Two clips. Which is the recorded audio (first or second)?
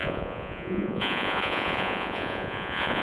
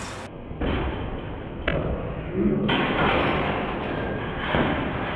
second